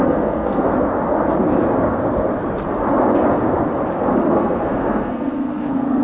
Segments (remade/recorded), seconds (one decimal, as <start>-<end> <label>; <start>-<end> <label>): 0.0-0.7 remade; 0.7-4.3 recorded; 4.3-6.0 remade